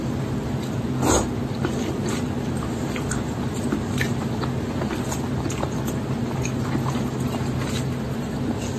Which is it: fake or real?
real